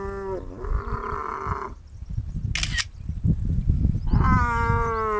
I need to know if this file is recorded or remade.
recorded